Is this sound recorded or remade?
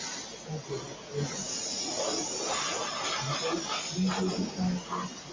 recorded